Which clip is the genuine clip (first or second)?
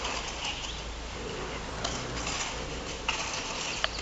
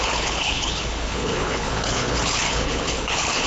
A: first